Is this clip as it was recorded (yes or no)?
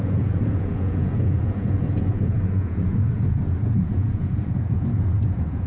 no